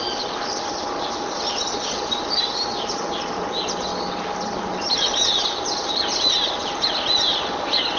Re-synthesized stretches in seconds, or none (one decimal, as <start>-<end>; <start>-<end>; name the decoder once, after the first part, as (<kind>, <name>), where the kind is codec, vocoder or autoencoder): none